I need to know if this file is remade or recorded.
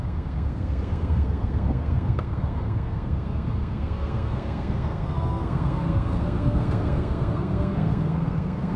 remade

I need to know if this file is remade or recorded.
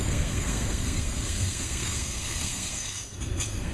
remade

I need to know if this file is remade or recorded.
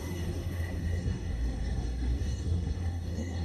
remade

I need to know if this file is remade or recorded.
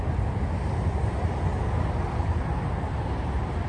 recorded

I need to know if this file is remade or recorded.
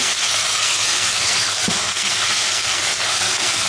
remade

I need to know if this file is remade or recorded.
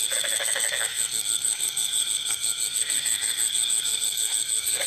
remade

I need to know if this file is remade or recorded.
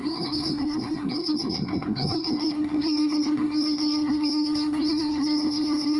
remade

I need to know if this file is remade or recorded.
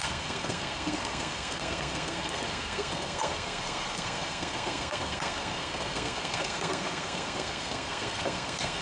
remade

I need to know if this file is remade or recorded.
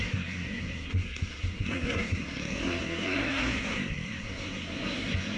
remade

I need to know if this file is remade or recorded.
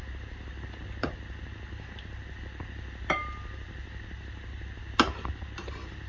recorded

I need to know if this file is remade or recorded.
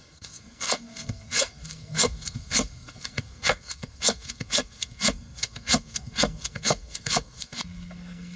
remade